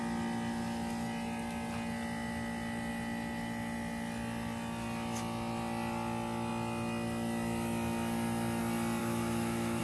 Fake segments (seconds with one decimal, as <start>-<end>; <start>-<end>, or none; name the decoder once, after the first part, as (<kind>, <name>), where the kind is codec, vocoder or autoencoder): 9.0-9.8 (autoencoder, DAC-VAE)